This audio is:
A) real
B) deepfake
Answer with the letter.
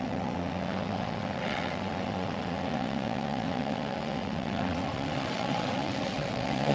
B